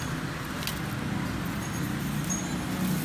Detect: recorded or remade recorded